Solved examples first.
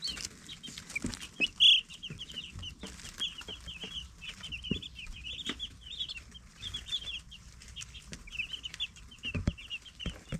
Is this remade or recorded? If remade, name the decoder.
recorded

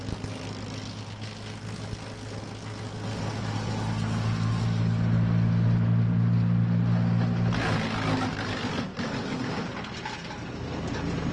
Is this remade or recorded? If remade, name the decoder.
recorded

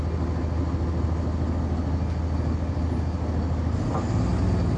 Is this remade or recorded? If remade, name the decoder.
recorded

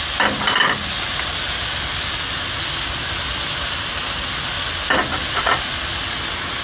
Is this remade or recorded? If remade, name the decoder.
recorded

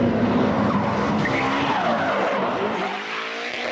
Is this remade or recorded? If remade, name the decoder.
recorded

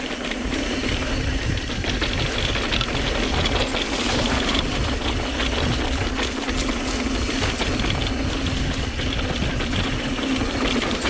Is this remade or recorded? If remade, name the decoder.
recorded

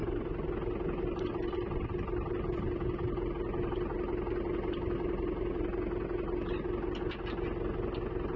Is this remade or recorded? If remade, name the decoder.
recorded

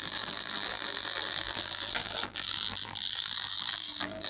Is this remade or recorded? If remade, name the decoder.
remade, vocoder, BigVGAN v2